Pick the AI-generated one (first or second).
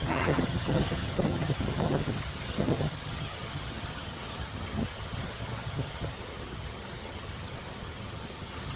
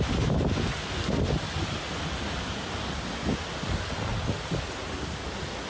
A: first